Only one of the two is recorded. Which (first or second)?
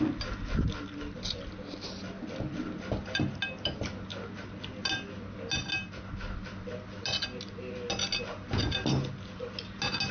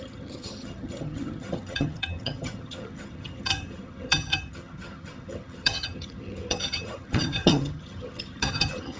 first